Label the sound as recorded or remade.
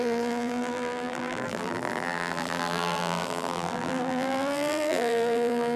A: remade